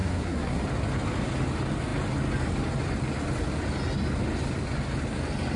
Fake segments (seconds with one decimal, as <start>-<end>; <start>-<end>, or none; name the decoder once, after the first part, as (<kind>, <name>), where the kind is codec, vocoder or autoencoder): 0.0-0.6 (codec, SNAC)